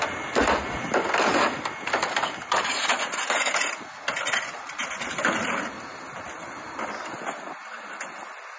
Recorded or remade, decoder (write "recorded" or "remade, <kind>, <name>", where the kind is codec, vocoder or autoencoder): recorded